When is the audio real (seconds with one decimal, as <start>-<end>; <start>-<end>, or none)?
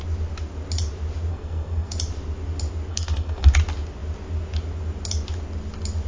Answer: 0.0-1.3; 1.9-2.9; 3.5-6.1